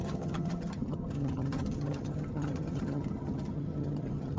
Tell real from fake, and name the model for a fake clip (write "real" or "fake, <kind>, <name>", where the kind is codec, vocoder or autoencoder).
fake, vocoder, HiFi-GAN